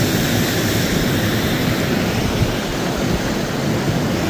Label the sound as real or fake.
real